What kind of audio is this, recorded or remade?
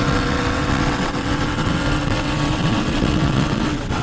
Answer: remade